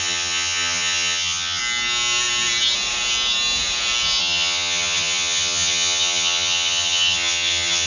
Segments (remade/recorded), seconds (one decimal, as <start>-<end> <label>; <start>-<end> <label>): 0.0-1.6 remade; 1.6-4.2 recorded; 4.2-7.9 remade